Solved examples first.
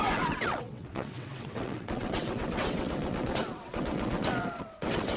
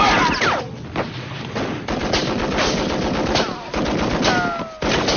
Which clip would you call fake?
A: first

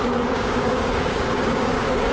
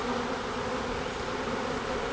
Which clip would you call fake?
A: first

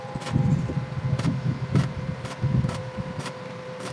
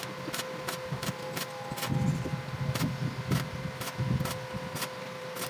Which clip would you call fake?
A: first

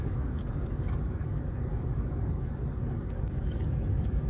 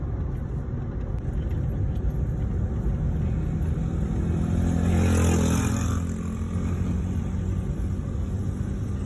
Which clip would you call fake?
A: first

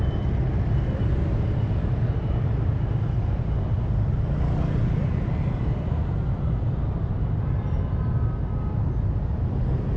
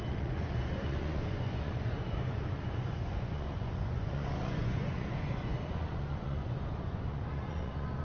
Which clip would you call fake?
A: second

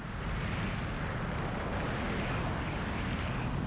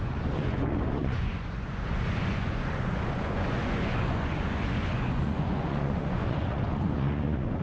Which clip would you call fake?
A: second